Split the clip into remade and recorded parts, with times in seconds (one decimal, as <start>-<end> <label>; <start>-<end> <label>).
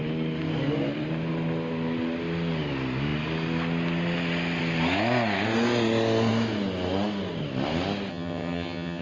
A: 0.0-8.1 recorded; 8.1-9.0 remade